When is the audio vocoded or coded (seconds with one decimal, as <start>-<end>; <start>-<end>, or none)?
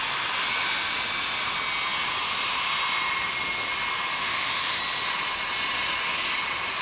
4.2-4.8